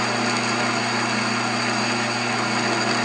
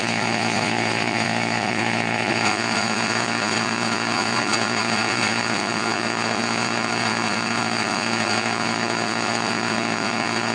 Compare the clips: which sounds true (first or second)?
first